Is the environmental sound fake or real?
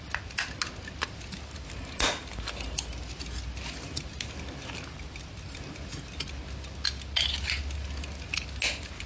real